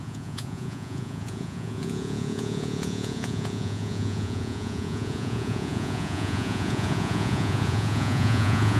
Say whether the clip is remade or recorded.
remade